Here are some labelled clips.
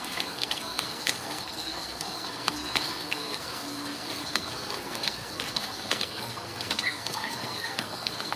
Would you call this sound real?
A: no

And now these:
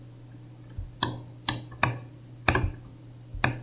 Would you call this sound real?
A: yes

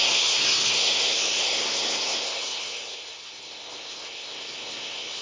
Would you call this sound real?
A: no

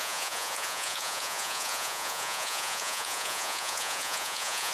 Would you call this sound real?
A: no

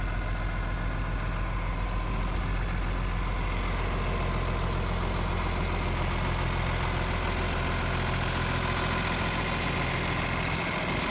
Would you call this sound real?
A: yes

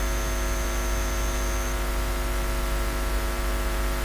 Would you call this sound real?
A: yes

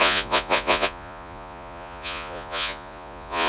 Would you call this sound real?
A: no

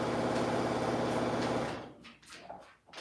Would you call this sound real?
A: yes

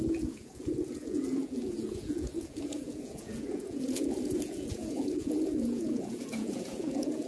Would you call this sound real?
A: no